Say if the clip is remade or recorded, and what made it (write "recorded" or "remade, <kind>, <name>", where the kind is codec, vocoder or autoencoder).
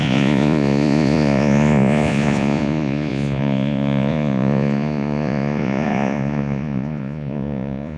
remade, vocoder, Vocos